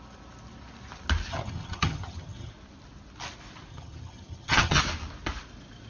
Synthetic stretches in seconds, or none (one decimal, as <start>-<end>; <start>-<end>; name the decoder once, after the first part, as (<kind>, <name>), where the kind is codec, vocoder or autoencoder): 1.3-2.5 (vocoder, HiFi-GAN); 3.7-4.8